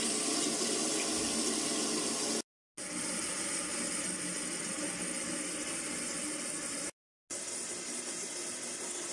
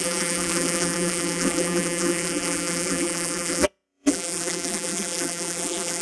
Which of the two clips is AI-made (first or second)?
second